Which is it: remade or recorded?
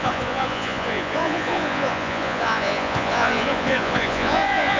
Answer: remade